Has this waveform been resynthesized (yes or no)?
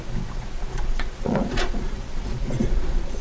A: yes